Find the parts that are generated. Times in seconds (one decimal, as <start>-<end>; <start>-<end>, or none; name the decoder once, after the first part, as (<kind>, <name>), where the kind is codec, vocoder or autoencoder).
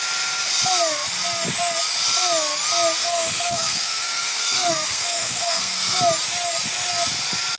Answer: 3.0-6.0 (codec, SNAC)